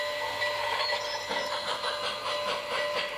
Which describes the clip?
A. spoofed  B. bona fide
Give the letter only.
B